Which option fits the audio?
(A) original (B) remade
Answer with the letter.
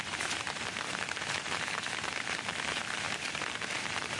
B